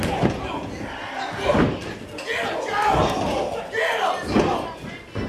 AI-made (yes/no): no